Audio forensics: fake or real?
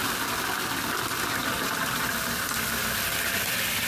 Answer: real